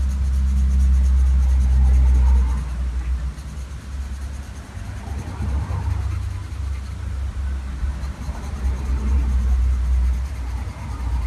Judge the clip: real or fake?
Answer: real